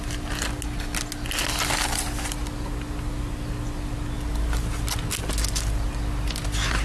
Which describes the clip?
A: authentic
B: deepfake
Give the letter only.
A